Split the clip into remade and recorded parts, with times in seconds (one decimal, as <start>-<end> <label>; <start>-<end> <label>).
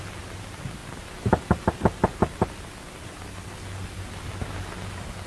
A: 0.0-5.3 recorded